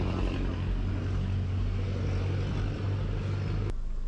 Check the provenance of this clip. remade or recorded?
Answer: recorded